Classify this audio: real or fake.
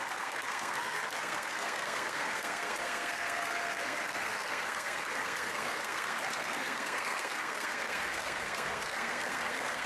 fake